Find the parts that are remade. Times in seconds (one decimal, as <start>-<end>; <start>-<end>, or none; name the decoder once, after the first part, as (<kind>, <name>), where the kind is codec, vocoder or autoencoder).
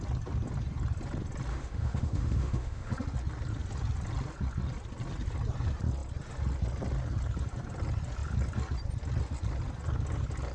1.5-2.9 (autoencoder, DAC-VAE)